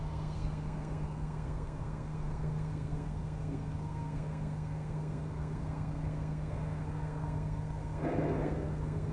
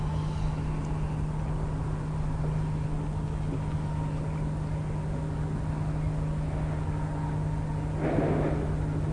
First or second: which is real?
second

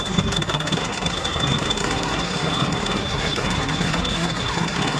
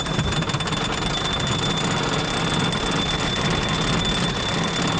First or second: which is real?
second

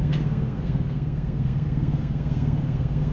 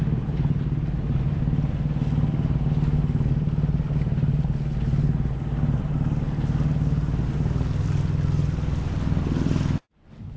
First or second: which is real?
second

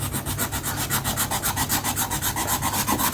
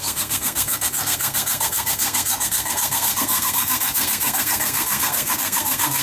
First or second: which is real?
first